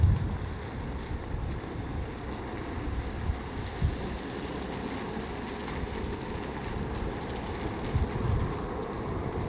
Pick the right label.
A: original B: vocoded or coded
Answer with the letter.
A